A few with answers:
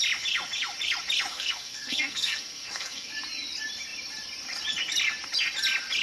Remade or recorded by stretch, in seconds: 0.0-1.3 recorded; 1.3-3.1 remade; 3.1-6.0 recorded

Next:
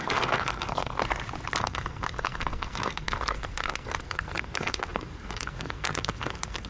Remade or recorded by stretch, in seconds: 0.0-1.0 remade; 1.0-1.6 recorded; 1.6-6.7 remade

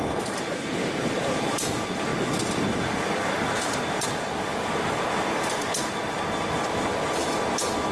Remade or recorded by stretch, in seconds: 0.0-7.9 recorded

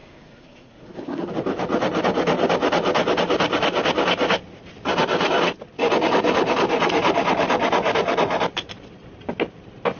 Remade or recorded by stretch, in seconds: 0.0-1.3 remade; 1.3-10.0 recorded

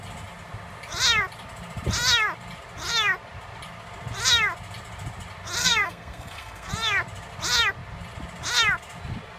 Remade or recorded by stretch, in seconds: 0.0-5.6 recorded; 5.6-6.7 remade; 6.7-9.4 recorded